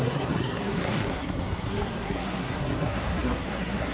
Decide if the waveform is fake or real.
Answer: fake